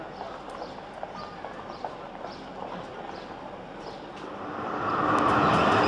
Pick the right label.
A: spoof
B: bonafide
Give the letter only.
B